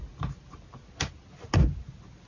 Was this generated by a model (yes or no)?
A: no